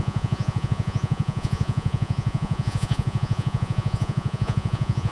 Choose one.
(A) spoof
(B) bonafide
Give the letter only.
A